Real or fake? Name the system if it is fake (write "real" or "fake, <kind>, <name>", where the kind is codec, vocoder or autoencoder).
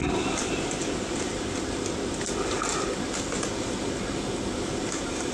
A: real